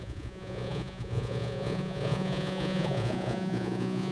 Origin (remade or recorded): remade